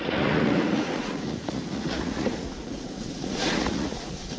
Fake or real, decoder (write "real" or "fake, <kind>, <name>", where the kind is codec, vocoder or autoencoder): fake, vocoder, Vocos